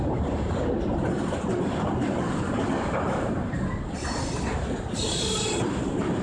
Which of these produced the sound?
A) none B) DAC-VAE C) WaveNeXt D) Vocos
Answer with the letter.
A